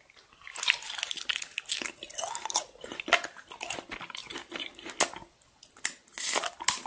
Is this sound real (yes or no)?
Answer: yes